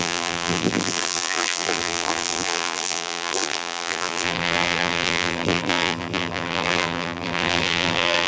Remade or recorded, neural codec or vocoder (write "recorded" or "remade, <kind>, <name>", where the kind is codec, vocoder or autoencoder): remade, vocoder, BigVGAN v2